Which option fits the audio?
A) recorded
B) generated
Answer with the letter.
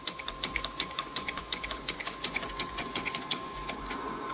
B